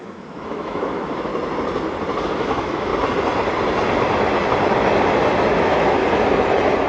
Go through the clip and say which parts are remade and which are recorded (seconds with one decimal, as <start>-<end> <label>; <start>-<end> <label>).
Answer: 0.0-1.3 remade; 1.3-2.2 recorded; 2.2-2.9 remade; 2.9-5.5 recorded; 5.5-6.0 remade; 6.0-6.9 recorded